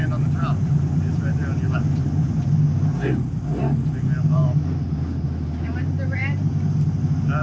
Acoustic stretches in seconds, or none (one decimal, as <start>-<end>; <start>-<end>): 0.0-7.4